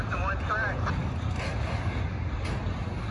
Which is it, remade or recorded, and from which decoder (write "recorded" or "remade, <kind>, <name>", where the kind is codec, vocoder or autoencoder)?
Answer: recorded